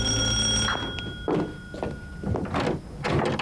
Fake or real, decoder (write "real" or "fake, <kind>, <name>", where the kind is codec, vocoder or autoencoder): real